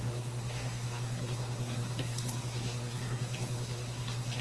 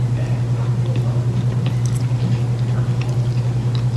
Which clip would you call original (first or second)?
second